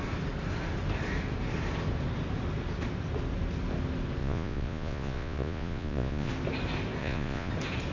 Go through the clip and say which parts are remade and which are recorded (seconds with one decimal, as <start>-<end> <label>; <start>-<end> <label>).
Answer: 0.0-4.2 recorded; 4.2-6.3 remade; 6.3-7.0 recorded; 7.0-7.5 remade; 7.5-7.9 recorded